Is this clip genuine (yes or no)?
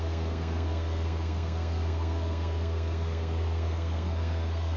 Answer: no